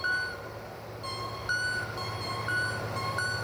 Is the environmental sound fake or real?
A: real